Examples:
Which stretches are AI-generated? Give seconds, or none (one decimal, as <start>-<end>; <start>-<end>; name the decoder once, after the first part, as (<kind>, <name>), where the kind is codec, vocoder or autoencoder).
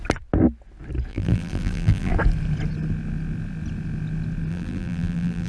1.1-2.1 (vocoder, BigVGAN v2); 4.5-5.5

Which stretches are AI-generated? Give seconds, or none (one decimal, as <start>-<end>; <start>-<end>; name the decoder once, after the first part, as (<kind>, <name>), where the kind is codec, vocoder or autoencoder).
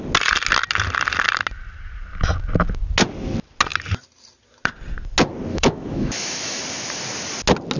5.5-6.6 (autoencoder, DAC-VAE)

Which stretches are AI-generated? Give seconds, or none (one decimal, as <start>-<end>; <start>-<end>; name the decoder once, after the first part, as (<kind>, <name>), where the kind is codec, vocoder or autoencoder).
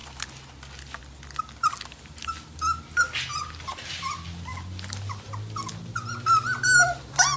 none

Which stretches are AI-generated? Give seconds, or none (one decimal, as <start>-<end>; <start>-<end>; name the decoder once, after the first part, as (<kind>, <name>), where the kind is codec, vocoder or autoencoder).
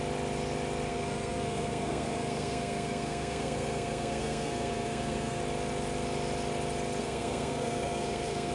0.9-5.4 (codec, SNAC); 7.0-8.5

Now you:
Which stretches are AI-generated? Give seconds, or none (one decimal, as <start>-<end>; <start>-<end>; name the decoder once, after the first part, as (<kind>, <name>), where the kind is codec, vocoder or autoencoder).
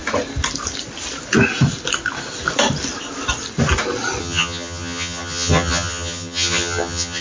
4.2-7.2 (vocoder, HiFi-GAN)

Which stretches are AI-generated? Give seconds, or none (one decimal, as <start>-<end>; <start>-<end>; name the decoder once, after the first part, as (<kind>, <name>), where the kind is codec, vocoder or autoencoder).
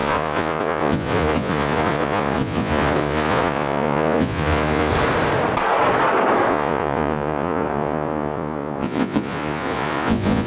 0.0-4.9 (vocoder, Vocos); 6.5-10.5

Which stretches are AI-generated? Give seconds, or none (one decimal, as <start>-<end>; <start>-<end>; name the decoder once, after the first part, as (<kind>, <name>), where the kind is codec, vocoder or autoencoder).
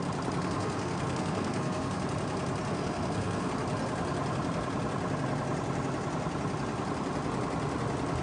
0.4-2.0 (codec, SNAC); 2.7-3.5